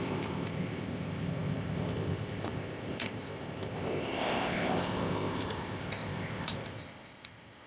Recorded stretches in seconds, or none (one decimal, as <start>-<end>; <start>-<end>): none

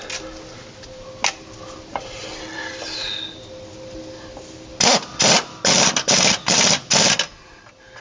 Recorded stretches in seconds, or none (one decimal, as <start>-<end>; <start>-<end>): 0.0-8.0

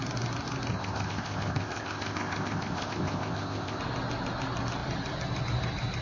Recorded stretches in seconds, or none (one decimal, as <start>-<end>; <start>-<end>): 0.0-0.7; 3.8-6.0

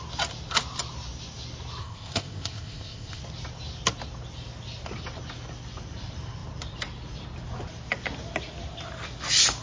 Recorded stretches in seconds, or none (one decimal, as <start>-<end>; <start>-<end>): 0.0-1.8; 3.2-9.6

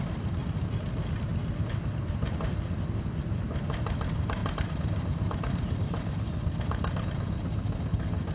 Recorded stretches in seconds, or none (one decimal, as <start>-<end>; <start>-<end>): 0.0-8.3